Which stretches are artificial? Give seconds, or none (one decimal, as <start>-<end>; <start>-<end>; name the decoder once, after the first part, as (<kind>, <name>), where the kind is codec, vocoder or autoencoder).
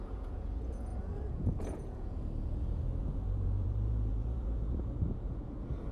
0.0-5.9 (vocoder, Vocos)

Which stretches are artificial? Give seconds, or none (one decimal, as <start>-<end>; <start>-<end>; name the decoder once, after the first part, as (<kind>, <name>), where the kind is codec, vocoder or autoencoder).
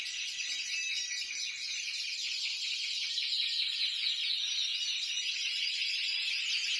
none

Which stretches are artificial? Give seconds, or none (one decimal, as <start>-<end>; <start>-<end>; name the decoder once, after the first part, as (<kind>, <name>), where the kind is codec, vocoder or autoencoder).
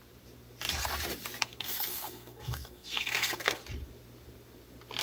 1.4-3.6 (codec, SNAC)